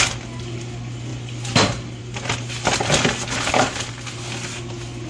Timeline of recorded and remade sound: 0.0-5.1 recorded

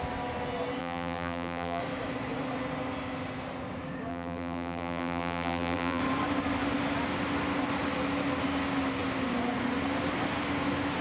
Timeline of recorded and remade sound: 0.0-0.8 recorded; 0.8-1.8 remade; 1.8-4.1 recorded; 4.1-6.0 remade; 6.0-11.0 recorded

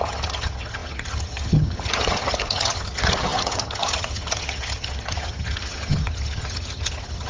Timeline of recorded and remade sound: 0.0-7.3 remade

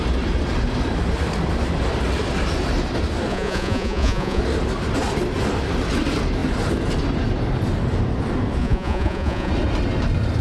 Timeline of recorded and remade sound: 0.0-3.3 recorded; 3.3-4.4 remade; 4.4-8.6 recorded; 8.6-9.5 remade; 9.5-10.4 recorded

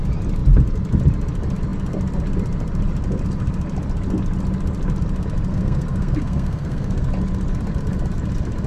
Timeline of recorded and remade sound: 0.0-5.5 recorded; 5.5-7.1 remade; 7.1-8.7 recorded

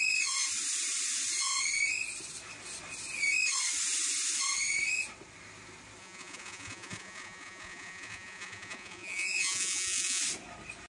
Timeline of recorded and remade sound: 0.0-6.0 recorded; 6.0-10.2 remade; 10.2-10.9 recorded